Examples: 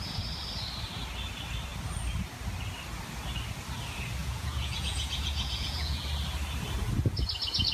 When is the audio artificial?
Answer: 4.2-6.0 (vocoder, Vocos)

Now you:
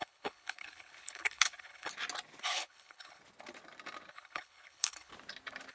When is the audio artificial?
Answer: 0.0-1.9 (codec, HILCodec); 2.4-3.2; 4.1-5.1

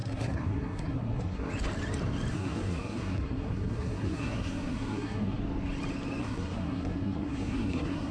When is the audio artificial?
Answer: 0.0-1.5 (codec, SNAC); 2.3-5.4; 6.2-8.1

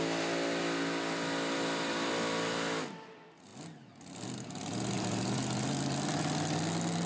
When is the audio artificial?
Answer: none

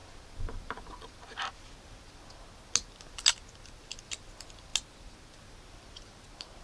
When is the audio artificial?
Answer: none